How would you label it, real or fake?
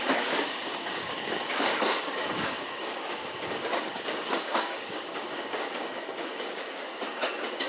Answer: fake